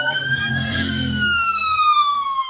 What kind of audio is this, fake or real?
fake